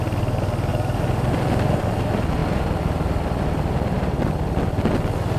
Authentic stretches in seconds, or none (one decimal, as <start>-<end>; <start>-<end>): 0.0-5.4